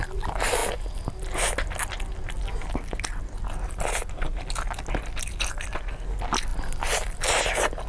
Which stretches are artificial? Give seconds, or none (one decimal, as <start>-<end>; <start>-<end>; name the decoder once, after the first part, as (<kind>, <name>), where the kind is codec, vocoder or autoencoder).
none